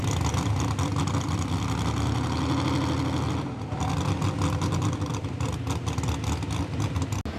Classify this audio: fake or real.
real